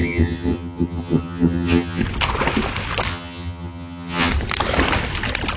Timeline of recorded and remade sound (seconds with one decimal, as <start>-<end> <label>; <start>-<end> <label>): 0.0-2.0 remade; 2.0-3.1 recorded; 3.1-4.3 remade; 4.3-5.6 recorded